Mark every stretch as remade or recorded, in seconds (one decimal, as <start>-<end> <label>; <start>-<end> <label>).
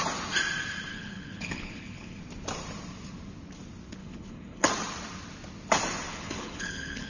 0.0-0.9 recorded; 0.9-2.2 remade; 2.2-4.0 recorded; 4.0-4.7 remade; 4.7-6.1 recorded; 6.1-7.1 remade